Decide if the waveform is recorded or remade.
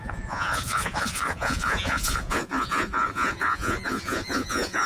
remade